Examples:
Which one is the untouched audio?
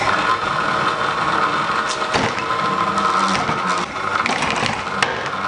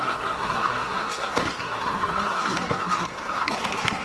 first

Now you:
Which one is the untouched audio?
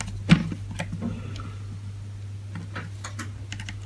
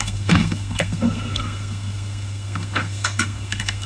first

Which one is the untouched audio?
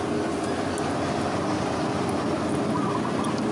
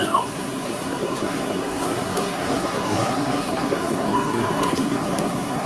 first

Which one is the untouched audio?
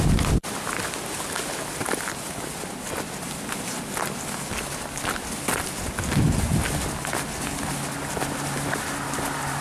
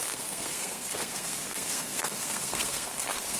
first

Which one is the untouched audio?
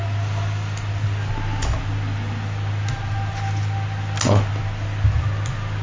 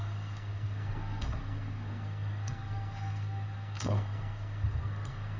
first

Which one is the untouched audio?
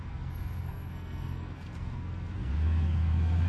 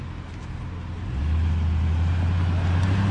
second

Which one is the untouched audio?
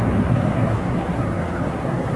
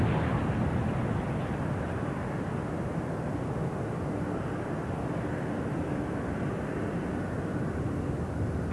second